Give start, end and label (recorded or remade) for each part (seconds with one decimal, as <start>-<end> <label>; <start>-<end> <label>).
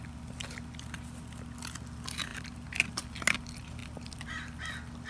0.0-5.1 recorded